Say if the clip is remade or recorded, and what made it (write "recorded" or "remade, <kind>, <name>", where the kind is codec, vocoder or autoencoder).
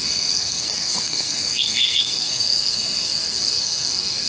remade, codec, SNAC